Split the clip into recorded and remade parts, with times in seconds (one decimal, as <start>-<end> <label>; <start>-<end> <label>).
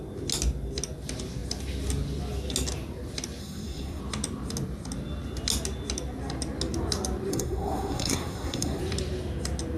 0.0-3.4 recorded; 3.4-4.0 remade; 4.0-7.3 recorded; 7.3-8.8 remade; 8.8-9.8 recorded